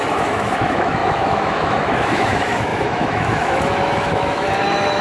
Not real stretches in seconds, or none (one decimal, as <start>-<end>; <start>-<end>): 0.0-5.0